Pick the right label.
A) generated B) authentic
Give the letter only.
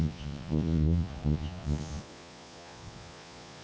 A